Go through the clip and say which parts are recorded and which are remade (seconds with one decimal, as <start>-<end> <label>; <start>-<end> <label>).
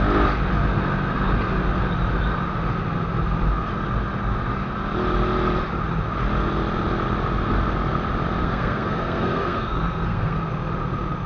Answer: 0.0-8.4 recorded; 8.4-10.5 remade; 10.5-11.3 recorded